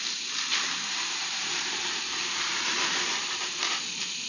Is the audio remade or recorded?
remade